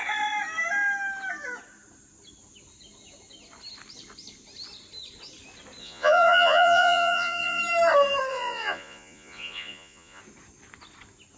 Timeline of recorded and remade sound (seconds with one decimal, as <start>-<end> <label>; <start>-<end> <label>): 0.0-5.8 recorded; 5.8-7.6 remade; 7.6-8.3 recorded; 8.3-10.2 remade; 10.2-11.4 recorded